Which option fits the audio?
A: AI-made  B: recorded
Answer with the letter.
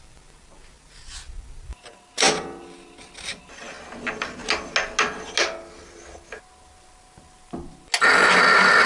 B